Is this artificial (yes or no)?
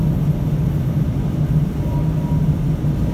no